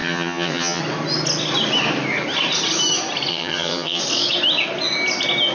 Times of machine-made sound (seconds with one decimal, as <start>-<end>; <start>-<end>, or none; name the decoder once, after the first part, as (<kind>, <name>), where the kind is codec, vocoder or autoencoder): 0.0-0.8 (vocoder, HiFi-GAN); 3.3-4.0